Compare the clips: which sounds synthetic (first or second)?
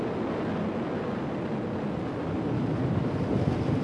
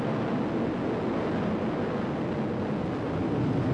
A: first